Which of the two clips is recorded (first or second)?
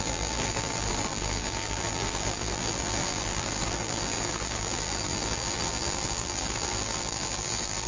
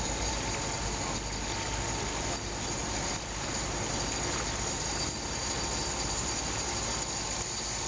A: second